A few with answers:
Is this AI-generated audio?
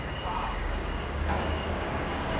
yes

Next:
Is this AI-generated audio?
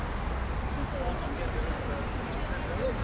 no